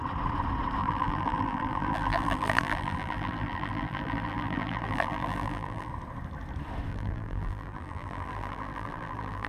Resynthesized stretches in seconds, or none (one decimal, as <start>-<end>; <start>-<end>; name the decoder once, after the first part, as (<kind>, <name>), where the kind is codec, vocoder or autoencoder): 0.8-5.9 (vocoder, BigVGAN v2); 6.9-9.5